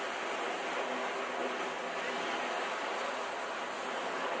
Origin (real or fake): real